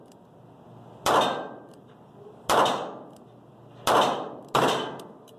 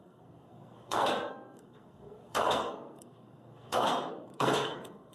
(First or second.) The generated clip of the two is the second